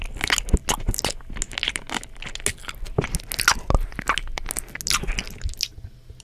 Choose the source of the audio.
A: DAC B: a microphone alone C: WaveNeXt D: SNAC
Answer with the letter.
B